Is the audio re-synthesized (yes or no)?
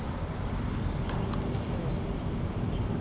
no